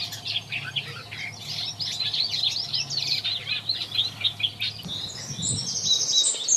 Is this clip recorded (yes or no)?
yes